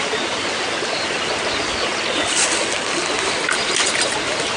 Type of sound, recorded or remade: recorded